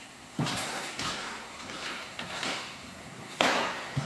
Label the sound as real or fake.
fake